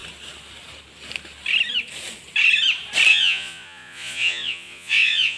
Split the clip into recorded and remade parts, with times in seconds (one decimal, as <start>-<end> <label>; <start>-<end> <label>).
0.0-3.1 recorded; 3.1-5.4 remade